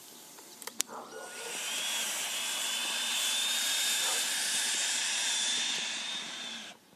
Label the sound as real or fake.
fake